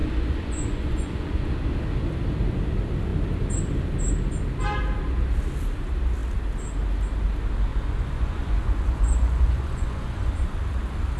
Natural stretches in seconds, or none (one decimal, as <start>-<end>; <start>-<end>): 1.5-7.7; 10.3-11.2